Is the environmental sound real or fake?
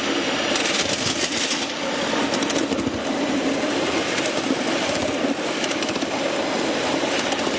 real